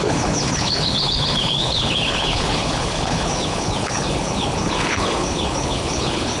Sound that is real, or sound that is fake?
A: fake